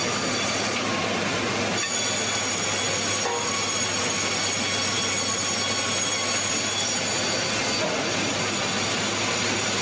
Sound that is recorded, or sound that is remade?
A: recorded